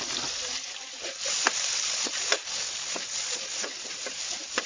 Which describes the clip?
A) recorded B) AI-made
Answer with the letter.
A